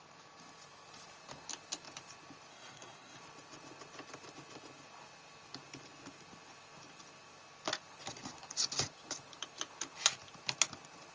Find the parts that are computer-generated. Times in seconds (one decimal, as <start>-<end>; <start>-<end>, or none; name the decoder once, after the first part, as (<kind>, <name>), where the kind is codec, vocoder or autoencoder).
2.5-3.2 (codec, SNAC)